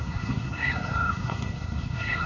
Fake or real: fake